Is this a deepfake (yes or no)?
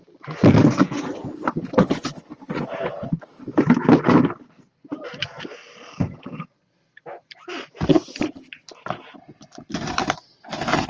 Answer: no